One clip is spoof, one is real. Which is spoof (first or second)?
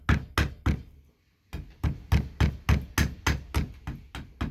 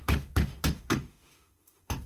second